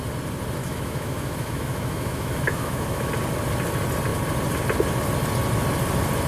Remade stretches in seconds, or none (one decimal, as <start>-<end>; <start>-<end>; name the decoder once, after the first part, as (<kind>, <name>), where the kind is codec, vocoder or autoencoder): 0.6-3.1 (autoencoder, DAC-VAE)